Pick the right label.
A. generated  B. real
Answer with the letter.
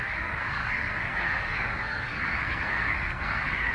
A